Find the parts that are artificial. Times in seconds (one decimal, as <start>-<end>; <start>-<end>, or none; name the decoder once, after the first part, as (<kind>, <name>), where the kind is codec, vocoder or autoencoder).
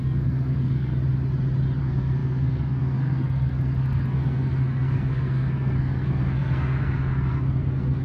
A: 0.0-0.9 (codec, SNAC); 1.8-8.0